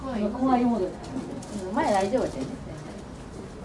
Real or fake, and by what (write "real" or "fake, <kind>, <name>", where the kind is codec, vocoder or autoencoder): real